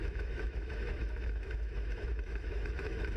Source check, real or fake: fake